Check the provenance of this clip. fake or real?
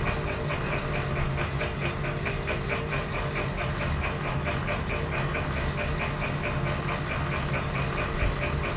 real